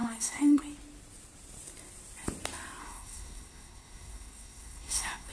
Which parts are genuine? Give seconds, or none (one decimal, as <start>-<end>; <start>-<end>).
0.6-2.8